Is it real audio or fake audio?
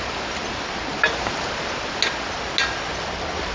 real